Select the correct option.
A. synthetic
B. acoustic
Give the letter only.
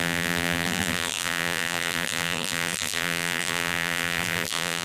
A